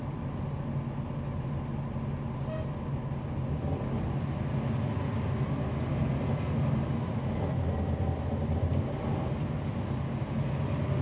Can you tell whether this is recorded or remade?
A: recorded